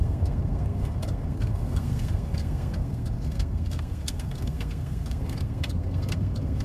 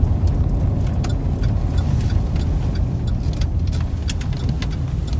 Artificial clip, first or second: first